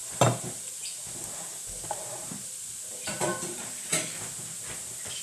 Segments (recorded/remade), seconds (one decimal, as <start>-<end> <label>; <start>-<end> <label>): 0.0-0.6 remade; 0.6-1.5 recorded; 1.5-3.7 remade; 3.7-5.2 recorded